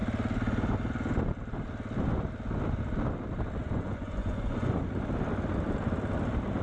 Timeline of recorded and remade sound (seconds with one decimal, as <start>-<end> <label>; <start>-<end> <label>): 0.0-3.6 recorded; 3.6-4.8 remade; 4.8-6.6 recorded